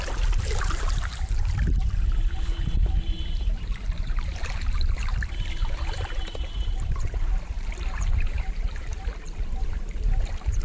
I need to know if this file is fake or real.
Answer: fake